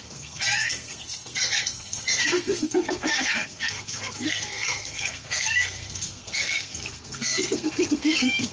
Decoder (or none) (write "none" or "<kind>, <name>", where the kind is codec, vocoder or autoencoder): codec, SNAC